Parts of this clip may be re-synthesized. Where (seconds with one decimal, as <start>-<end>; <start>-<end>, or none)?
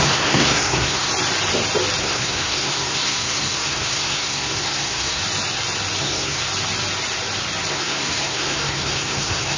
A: 0.0-1.1; 2.0-5.2; 6.0-6.5; 7.7-9.6